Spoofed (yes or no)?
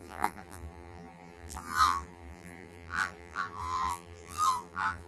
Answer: yes